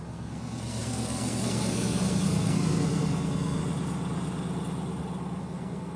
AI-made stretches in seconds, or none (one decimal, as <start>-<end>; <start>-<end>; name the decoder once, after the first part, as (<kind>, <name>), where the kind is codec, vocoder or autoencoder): 0.0-3.6 (codec, SNAC); 5.4-6.0